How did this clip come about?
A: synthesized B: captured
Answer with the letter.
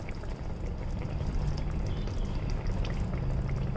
B